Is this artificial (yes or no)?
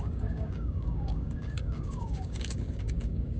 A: yes